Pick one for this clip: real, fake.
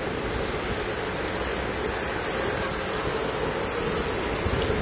real